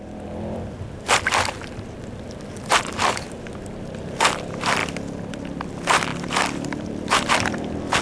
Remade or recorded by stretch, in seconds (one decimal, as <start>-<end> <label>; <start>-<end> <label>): 0.0-4.8 remade; 4.8-5.3 recorded; 5.3-8.0 remade